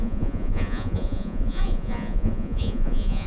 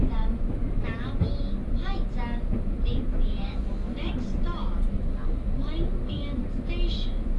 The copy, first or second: first